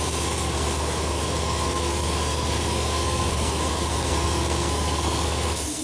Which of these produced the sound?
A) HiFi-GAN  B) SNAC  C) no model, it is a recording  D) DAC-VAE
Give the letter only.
B